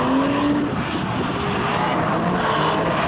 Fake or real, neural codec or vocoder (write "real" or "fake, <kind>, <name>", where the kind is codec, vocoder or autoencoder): real